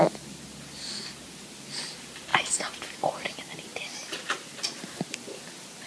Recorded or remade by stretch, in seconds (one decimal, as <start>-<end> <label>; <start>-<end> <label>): 0.0-5.9 recorded